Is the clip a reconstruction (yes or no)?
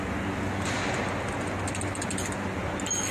no